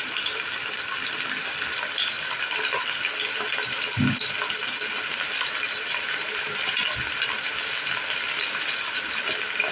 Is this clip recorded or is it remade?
recorded